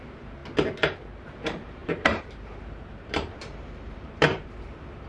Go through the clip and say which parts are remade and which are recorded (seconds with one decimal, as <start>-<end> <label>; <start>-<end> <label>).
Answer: 0.0-0.4 remade; 0.4-1.2 recorded; 1.2-5.1 remade